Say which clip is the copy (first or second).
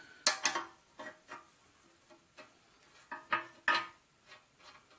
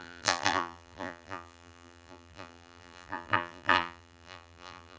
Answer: second